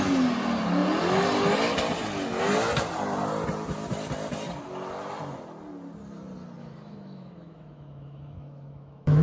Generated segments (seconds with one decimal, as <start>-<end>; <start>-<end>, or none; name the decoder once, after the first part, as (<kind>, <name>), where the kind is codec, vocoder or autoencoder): 6.6-9.2 (autoencoder, DAC-VAE)